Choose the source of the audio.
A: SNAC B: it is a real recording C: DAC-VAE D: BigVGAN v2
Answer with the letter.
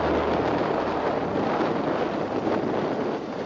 B